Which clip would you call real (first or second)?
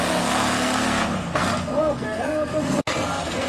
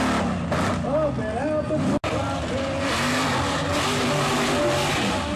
second